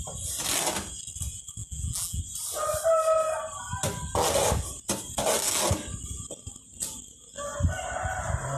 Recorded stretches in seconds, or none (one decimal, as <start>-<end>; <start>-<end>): 0.0-1.6; 2.2-8.6